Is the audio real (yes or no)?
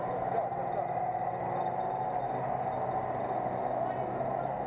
yes